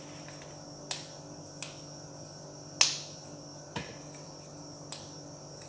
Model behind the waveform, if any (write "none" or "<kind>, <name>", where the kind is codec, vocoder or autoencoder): none